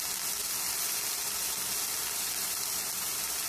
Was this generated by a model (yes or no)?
no